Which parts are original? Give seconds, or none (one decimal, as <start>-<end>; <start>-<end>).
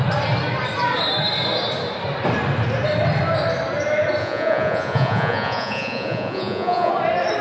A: 0.0-4.2; 6.9-7.4